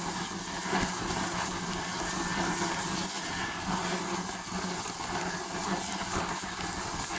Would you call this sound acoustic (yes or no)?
yes